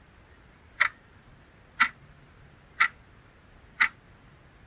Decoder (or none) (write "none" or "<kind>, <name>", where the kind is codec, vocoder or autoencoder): none